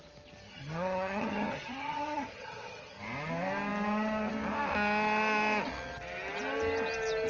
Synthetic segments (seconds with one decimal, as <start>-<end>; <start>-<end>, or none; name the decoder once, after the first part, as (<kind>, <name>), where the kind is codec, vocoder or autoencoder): 0.5-3.0 (vocoder, HiFi-GAN)